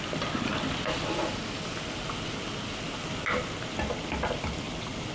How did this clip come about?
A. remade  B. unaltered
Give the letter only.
B